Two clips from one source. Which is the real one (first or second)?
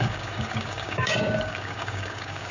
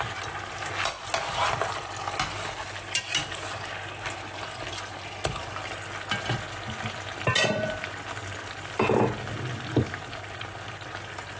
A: second